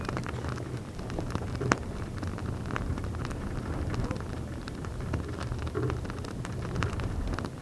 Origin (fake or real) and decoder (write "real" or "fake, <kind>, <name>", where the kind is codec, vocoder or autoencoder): real